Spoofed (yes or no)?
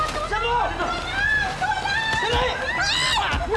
no